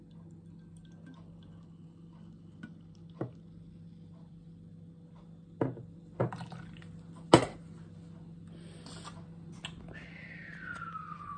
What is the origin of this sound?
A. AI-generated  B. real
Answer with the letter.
B